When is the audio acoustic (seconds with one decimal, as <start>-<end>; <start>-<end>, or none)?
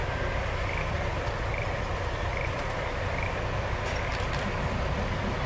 1.5-1.9; 3.3-5.5